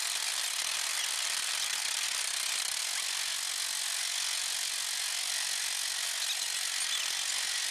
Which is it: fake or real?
real